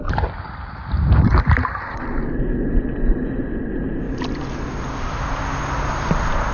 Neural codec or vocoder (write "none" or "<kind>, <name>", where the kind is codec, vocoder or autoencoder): none